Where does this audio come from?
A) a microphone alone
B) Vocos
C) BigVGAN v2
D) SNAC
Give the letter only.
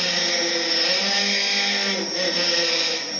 A